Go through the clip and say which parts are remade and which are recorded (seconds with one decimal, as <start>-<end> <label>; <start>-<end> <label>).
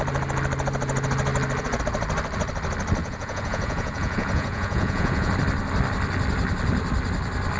0.0-3.0 recorded; 3.0-5.3 remade; 5.3-7.6 recorded